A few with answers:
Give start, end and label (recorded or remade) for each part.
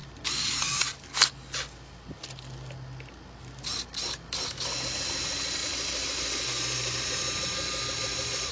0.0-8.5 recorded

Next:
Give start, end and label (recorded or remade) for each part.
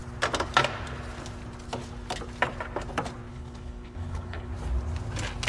0.0-3.3 recorded; 3.3-4.5 remade; 4.5-5.5 recorded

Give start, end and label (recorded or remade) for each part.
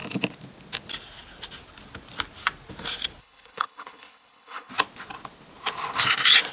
0.0-3.2 recorded; 3.2-4.7 remade; 4.7-6.5 recorded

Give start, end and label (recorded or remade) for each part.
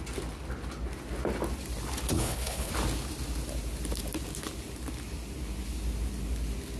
0.0-2.1 recorded; 2.1-2.7 remade; 2.7-6.8 recorded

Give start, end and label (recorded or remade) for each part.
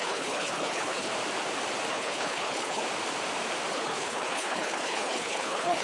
0.0-1.1 remade; 1.1-1.9 recorded; 1.9-2.8 remade; 2.8-3.7 recorded; 3.7-5.8 remade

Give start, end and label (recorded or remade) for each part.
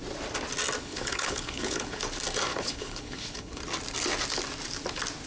0.0-0.8 recorded; 0.8-2.0 remade; 2.0-2.5 recorded; 2.5-3.6 remade; 3.6-5.3 recorded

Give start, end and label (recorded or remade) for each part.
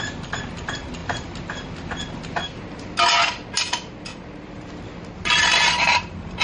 0.0-6.4 recorded